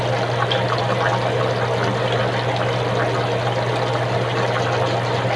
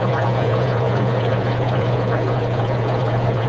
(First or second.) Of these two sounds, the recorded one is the first